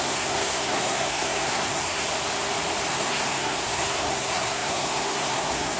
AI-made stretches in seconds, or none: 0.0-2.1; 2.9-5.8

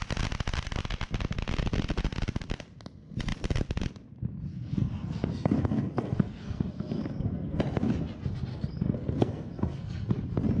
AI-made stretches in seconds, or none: 4.5-7.6; 8.5-10.1

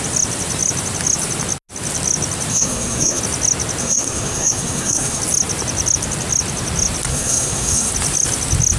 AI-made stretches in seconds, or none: 2.5-3.2; 3.8-5.2; 7.1-7.9